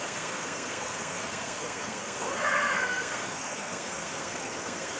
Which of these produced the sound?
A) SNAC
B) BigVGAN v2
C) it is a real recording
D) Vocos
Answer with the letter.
A